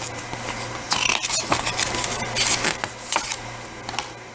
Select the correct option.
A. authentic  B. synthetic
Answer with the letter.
A